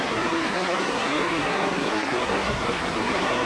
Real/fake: fake